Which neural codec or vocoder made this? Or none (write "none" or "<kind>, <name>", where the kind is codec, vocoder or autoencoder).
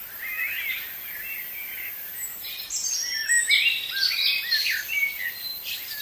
none